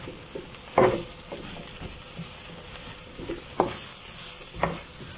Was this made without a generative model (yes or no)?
yes